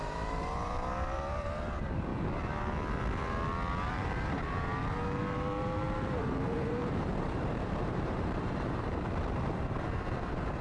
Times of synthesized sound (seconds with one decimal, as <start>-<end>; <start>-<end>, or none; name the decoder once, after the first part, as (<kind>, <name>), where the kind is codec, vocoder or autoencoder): 0.0-2.1 (vocoder, BigVGAN v2); 3.9-10.6

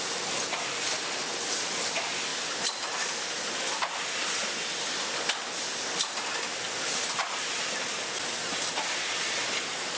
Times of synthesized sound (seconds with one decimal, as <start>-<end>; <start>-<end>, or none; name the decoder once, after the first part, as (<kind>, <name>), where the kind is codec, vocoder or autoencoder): none